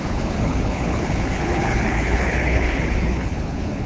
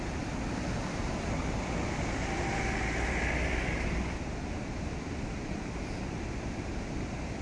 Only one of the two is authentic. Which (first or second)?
second